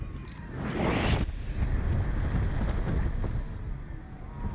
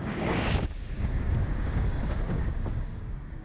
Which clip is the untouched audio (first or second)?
first